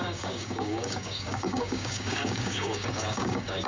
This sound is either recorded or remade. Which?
remade